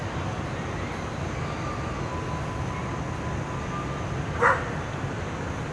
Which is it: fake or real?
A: real